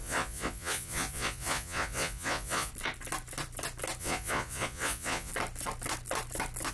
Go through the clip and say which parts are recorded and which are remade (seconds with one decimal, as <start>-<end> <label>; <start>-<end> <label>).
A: 0.0-2.7 remade; 2.7-4.0 recorded; 4.0-5.3 remade; 5.3-6.7 recorded